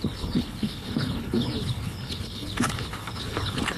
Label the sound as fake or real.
fake